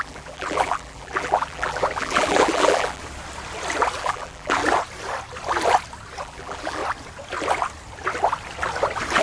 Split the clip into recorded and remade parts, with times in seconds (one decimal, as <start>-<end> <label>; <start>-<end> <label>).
0.0-3.0 remade; 3.0-4.0 recorded; 4.0-4.6 remade; 4.6-6.2 recorded; 6.2-6.8 remade; 6.8-9.2 recorded